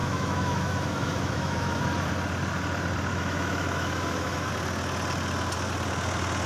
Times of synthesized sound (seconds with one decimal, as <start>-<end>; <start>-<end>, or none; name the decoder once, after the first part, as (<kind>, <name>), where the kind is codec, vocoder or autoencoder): 0.0-1.8 (autoencoder, DAC-VAE); 3.1-4.5

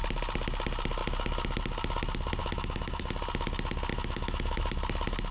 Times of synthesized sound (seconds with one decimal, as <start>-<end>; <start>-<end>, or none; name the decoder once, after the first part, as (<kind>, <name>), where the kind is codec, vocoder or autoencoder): 2.4-3.1 (autoencoder, DAC-VAE); 3.9-4.6